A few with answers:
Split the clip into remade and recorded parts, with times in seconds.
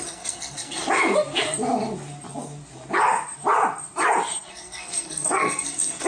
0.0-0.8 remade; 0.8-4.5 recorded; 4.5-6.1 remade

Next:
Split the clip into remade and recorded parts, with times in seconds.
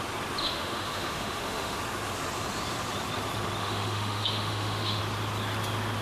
0.0-0.4 recorded; 0.4-1.8 remade; 1.8-3.6 recorded; 3.6-5.0 remade; 5.0-6.0 recorded